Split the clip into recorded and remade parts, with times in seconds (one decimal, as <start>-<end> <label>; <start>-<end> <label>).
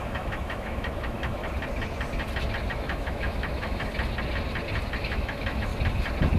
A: 0.0-1.4 remade; 1.4-2.7 recorded; 2.7-3.9 remade; 3.9-5.0 recorded; 5.0-5.7 remade; 5.7-6.4 recorded